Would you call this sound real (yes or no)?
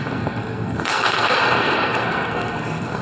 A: no